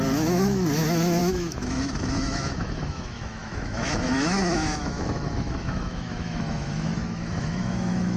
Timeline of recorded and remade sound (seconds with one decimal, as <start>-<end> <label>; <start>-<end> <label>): 0.0-8.2 remade